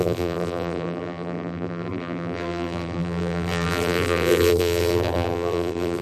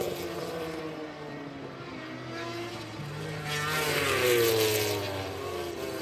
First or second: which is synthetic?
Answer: first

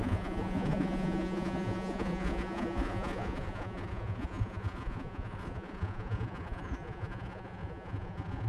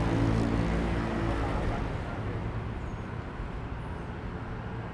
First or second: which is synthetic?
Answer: first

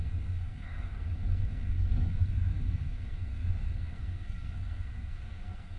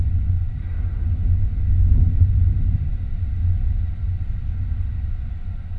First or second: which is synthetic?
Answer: first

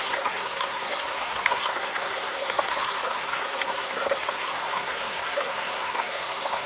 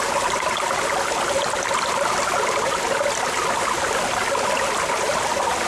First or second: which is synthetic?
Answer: first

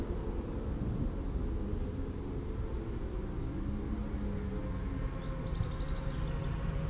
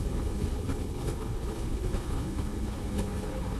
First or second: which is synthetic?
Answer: second